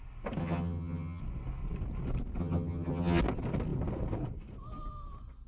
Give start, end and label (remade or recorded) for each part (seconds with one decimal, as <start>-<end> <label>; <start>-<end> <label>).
0.0-0.4 recorded; 0.4-1.2 remade; 1.2-2.4 recorded; 2.4-3.2 remade; 3.2-5.5 recorded

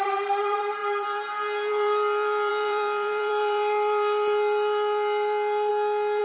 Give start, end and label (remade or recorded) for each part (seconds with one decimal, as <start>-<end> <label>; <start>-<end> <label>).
0.0-5.7 remade; 5.7-6.2 recorded

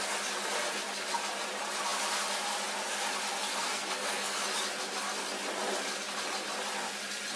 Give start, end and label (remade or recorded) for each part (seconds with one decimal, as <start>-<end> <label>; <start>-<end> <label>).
0.0-3.5 recorded; 3.5-4.4 remade; 4.4-7.4 recorded

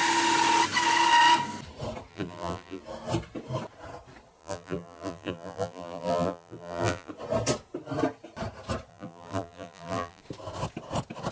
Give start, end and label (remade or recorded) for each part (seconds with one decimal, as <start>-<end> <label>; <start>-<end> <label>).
0.0-2.1 recorded; 2.1-2.8 remade; 2.8-4.4 recorded; 4.4-7.1 remade; 7.1-8.9 recorded; 8.9-10.2 remade; 10.2-11.3 recorded

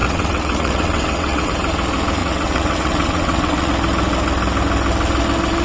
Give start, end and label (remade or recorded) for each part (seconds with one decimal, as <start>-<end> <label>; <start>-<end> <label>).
0.0-1.5 remade; 1.5-2.2 recorded; 2.2-3.7 remade; 3.7-5.6 recorded

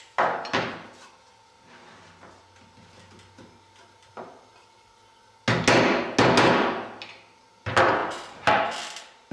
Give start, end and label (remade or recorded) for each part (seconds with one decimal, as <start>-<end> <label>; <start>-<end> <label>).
0.0-9.3 recorded

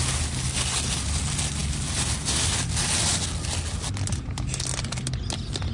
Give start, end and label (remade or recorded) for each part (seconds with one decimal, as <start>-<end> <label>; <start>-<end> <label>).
0.0-5.7 recorded